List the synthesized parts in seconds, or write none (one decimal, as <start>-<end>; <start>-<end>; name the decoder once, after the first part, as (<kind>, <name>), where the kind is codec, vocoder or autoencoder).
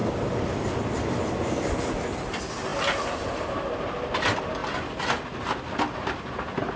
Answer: none